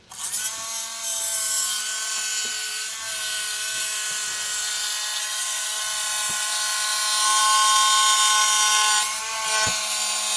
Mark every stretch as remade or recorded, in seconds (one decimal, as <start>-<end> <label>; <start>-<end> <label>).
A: 0.0-5.2 recorded; 5.2-5.8 remade; 5.8-10.4 recorded